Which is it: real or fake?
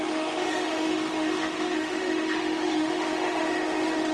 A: fake